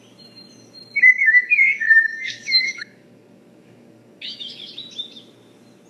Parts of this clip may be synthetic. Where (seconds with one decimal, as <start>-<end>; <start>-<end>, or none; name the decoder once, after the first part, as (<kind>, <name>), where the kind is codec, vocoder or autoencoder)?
1.2-4.7 (codec, DAC)